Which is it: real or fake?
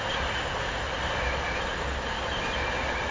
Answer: real